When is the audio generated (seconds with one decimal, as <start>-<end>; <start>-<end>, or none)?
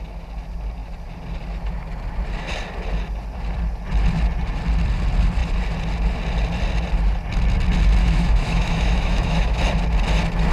8.0-9.6